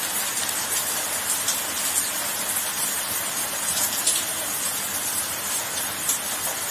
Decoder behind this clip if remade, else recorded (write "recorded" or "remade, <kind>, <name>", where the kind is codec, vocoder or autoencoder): recorded